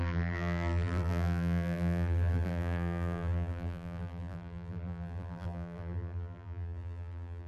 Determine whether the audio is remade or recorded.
remade